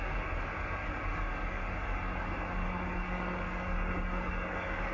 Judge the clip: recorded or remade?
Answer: remade